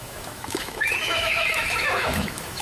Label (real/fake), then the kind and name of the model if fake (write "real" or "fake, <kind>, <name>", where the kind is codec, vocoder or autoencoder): fake, autoencoder, DAC-VAE